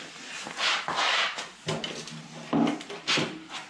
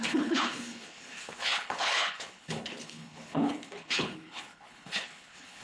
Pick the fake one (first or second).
second